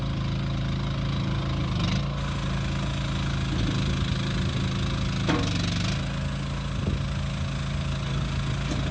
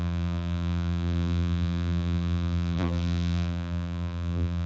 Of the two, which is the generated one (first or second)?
second